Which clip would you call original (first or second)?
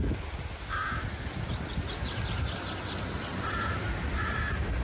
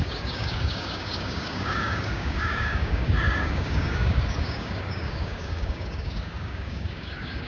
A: first